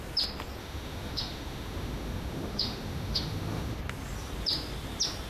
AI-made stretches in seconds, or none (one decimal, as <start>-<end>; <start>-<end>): 0.6-3.8